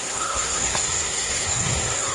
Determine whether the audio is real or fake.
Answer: fake